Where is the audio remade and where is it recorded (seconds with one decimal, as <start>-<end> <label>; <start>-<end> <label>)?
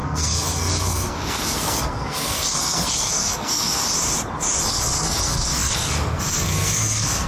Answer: 0.0-3.8 remade; 3.8-4.7 recorded; 4.7-7.3 remade